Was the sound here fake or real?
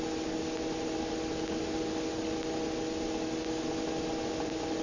real